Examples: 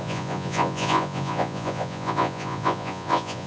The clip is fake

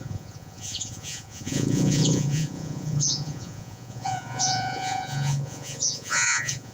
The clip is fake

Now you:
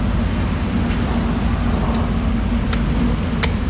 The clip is real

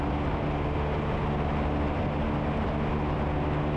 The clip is real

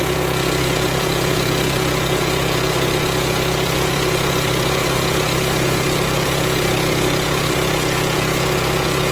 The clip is fake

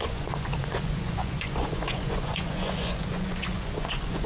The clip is fake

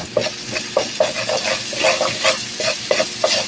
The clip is real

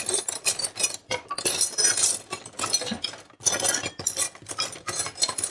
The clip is real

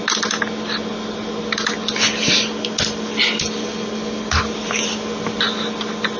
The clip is real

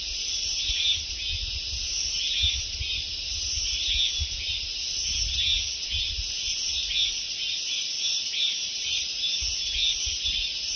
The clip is real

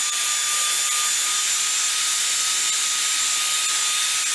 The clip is real